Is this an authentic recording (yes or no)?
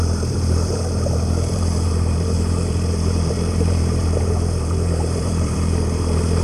no